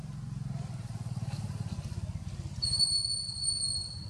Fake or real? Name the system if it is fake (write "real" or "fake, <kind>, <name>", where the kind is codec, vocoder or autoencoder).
real